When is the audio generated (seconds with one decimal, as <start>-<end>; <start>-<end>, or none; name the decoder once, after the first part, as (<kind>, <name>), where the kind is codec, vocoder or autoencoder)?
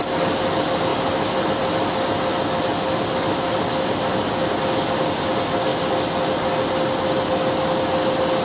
none